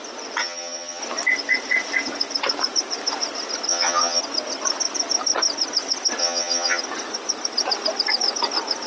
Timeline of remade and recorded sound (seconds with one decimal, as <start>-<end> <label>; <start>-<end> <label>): 0.0-0.4 recorded; 0.4-1.0 remade; 1.0-3.7 recorded; 3.7-4.2 remade; 4.2-6.2 recorded; 6.2-6.8 remade; 6.8-8.9 recorded